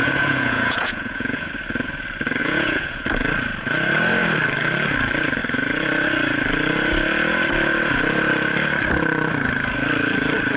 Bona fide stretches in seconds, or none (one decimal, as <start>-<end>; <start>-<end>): 1.5-2.4; 3.0-10.6